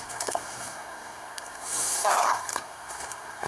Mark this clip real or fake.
fake